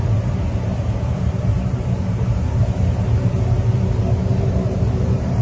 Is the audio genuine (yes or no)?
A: no